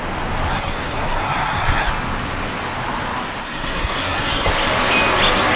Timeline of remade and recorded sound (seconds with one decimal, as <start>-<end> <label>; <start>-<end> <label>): 0.0-0.5 recorded; 0.5-1.9 remade; 1.9-3.4 recorded; 3.4-4.5 remade; 4.5-5.6 recorded